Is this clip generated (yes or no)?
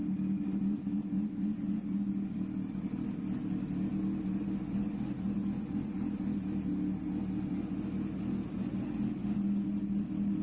no